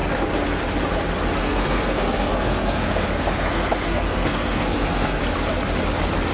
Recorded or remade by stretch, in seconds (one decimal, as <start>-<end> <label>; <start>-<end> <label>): 0.0-1.4 recorded; 1.4-5.2 remade; 5.2-6.3 recorded